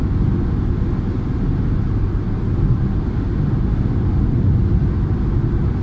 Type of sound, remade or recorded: recorded